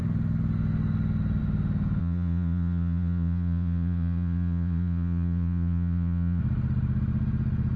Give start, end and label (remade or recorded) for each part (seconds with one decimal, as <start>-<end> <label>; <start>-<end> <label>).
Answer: 0.0-2.0 recorded; 2.0-6.4 remade; 6.4-7.8 recorded